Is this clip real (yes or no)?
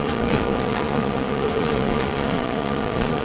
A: no